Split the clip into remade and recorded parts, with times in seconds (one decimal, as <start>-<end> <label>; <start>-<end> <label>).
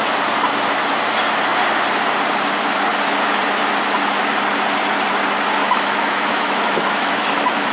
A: 0.0-5.6 recorded; 5.6-7.7 remade